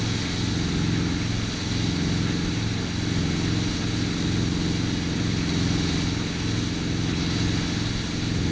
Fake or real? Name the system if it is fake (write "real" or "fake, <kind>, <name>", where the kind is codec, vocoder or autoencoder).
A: real